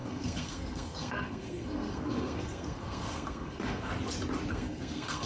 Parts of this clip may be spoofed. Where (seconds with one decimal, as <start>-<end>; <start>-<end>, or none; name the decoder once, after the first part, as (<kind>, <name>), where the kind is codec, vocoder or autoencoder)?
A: 0.0-3.9 (codec, SNAC); 4.5-5.3